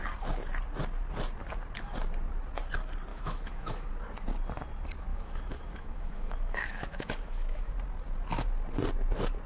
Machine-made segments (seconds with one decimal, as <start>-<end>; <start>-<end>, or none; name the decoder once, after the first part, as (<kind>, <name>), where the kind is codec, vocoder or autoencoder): 3.1-3.9 (autoencoder, DAC-VAE); 5.1-7.7